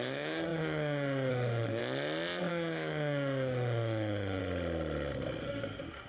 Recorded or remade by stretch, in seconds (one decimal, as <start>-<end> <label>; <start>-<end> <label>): 0.0-1.8 remade; 1.8-2.5 recorded; 2.5-4.4 remade; 4.4-5.4 recorded; 5.4-6.1 remade